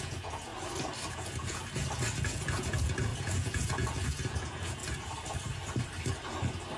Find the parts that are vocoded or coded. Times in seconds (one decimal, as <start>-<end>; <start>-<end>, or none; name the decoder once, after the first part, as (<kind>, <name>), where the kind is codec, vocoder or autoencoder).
0.0-0.5 (vocoder, Vocos); 1.1-1.6; 2.2-4.8